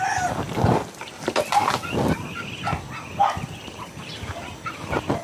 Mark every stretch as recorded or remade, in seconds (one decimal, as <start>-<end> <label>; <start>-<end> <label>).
0.0-5.2 recorded